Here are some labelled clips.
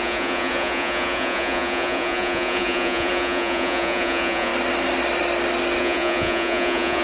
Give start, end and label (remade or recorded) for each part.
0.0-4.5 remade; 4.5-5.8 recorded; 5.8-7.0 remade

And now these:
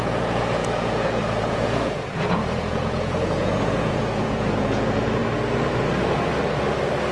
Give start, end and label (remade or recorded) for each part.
0.0-5.2 remade; 5.2-7.1 recorded

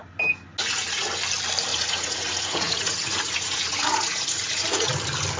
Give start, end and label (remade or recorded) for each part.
0.0-0.6 recorded; 0.6-1.1 remade; 1.1-1.7 recorded; 1.7-4.9 remade; 4.9-5.4 recorded

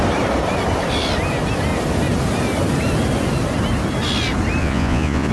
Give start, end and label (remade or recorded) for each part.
0.0-4.6 recorded; 4.6-5.3 remade

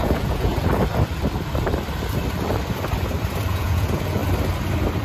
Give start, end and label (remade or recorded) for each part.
0.0-0.5 remade; 0.5-3.5 recorded; 3.5-4.2 remade; 4.2-5.0 recorded

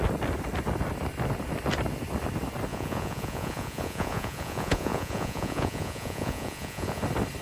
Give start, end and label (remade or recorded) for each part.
0.0-2.7 recorded; 2.7-7.0 remade; 7.0-7.4 recorded